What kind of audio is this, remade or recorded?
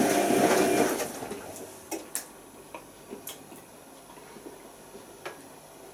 recorded